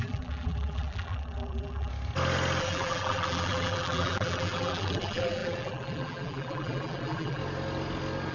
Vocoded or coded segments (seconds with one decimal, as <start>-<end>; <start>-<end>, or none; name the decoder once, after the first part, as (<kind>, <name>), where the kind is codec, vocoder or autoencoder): 0.0-1.9 (vocoder, BigVGAN v2); 2.6-7.4